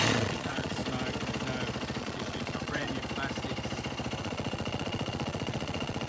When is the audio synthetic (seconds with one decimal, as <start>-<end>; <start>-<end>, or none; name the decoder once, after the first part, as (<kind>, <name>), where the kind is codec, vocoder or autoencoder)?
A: 0.0-0.8 (vocoder, Vocos); 2.0-2.9; 4.2-6.1